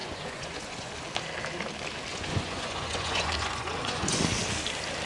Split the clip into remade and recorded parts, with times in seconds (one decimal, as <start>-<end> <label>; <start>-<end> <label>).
0.0-0.9 remade; 0.9-2.1 recorded; 2.1-4.2 remade; 4.2-5.1 recorded